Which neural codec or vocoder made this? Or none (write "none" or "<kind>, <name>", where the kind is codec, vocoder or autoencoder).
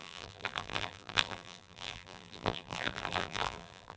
vocoder, BigVGAN v2